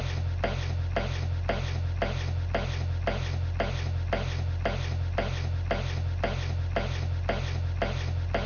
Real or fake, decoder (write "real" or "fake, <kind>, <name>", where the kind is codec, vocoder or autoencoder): real